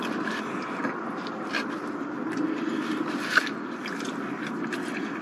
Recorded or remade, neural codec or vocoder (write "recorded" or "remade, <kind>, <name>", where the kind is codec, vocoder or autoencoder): recorded